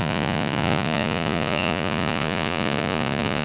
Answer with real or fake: fake